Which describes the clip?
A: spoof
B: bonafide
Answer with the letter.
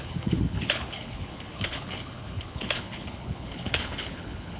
A